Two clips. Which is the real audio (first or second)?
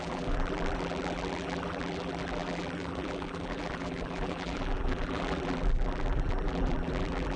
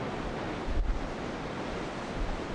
second